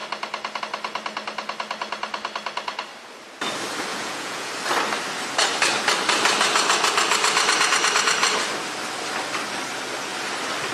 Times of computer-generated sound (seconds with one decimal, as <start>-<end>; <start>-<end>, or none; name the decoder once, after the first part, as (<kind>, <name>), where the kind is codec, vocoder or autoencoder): 3.9-4.5 (vocoder, Vocos)